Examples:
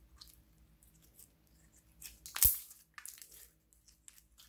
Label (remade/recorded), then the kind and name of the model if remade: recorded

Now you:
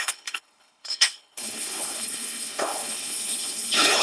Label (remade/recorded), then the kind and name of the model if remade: remade, codec, HILCodec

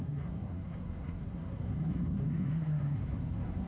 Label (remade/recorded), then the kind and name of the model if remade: remade, codec, SNAC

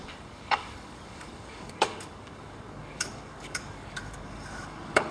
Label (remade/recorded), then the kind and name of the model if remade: remade, codec, DAC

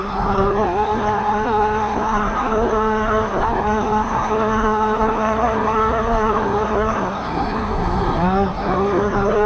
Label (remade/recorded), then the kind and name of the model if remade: remade, codec, SNAC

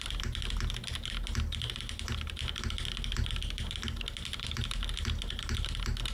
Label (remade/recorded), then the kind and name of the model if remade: recorded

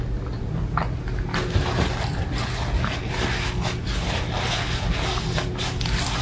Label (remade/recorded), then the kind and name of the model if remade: recorded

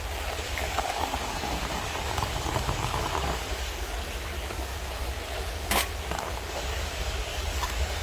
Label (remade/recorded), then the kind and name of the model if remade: remade, codec, DAC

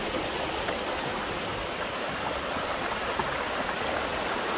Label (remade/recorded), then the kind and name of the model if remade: recorded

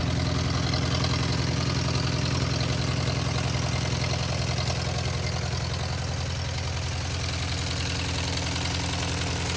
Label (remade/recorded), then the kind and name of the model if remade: recorded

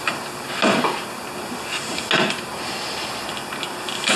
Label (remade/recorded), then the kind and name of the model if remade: recorded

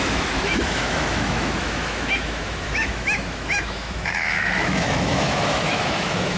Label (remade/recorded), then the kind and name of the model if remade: remade, autoencoder, DAC-VAE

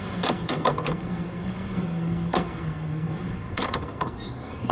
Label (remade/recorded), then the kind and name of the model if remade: remade, codec, SNAC